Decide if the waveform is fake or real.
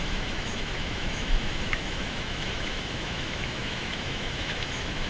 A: fake